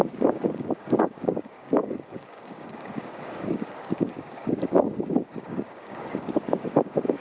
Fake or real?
fake